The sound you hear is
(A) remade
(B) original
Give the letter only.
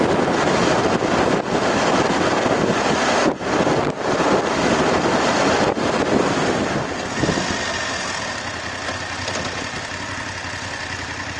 B